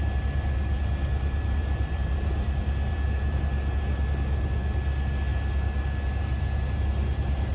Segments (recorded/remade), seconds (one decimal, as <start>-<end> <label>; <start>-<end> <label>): 0.0-1.6 recorded; 1.6-3.4 remade; 3.4-7.5 recorded